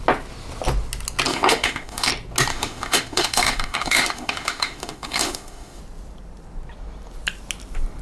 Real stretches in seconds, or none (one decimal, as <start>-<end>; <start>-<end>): 0.0-1.3; 2.1-2.5; 5.8-8.0